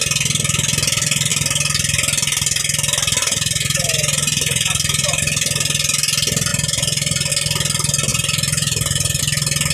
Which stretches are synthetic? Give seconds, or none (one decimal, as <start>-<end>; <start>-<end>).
3.2-5.2; 6.5-7.3; 8.1-9.2